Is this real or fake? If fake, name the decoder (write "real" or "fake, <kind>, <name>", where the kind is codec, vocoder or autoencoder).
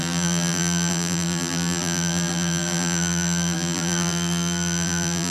fake, vocoder, BigVGAN v2